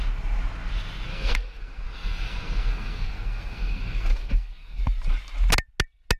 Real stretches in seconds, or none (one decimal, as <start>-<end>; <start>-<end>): 0.0-1.1; 4.8-6.2